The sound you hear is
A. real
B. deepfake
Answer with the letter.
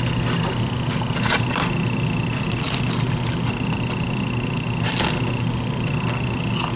A